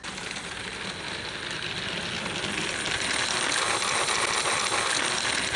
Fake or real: real